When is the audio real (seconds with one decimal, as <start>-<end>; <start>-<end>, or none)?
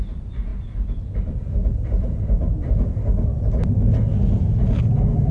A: 0.0-0.5; 3.5-5.3